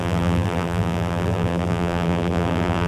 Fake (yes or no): yes